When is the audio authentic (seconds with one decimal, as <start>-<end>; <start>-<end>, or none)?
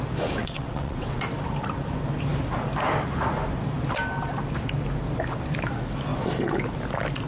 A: 0.0-0.4; 1.2-7.3